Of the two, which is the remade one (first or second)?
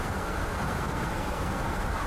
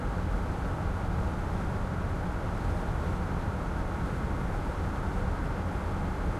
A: first